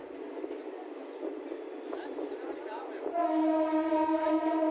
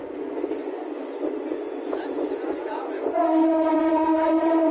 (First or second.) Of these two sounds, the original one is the first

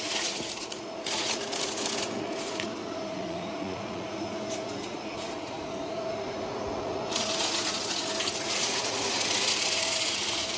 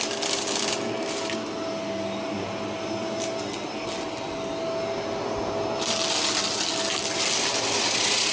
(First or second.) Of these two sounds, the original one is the second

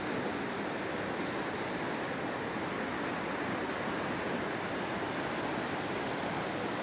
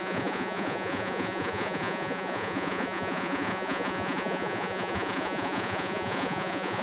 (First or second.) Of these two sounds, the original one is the first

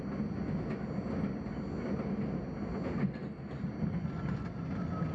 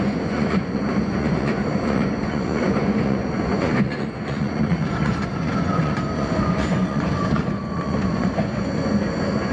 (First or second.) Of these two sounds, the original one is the first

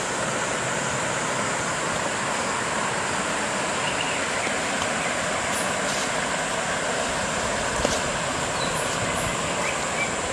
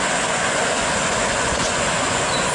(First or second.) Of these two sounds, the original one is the first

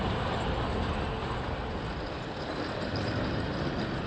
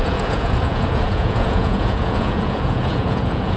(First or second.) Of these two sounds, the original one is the first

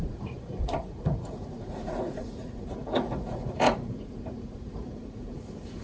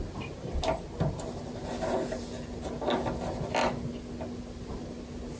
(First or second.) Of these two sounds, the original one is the second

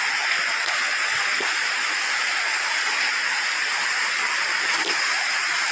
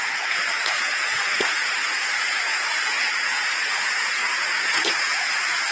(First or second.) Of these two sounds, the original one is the first